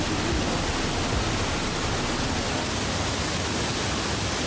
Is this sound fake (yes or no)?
no